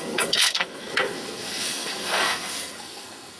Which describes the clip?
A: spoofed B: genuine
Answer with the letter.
A